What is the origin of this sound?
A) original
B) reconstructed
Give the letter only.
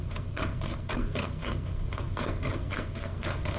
B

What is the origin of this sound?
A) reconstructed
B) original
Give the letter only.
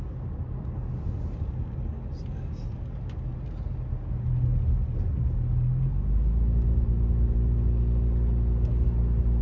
B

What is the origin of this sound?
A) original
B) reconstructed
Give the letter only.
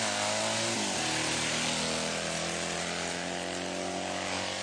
A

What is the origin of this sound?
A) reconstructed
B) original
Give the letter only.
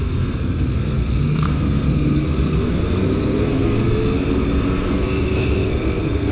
A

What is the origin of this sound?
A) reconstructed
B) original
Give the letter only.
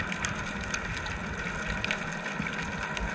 B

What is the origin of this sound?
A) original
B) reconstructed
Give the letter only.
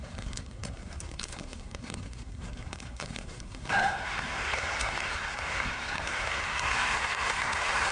B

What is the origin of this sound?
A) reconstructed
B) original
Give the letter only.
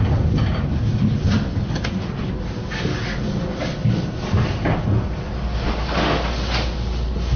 B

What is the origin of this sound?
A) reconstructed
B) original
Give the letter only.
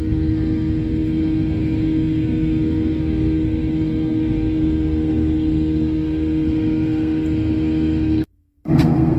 A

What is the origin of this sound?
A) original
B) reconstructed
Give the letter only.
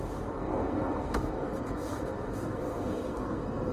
B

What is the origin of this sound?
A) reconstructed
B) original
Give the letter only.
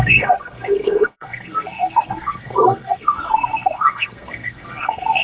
A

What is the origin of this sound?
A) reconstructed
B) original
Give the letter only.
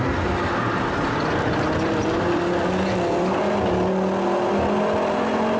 B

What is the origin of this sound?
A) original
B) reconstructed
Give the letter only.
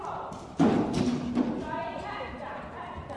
A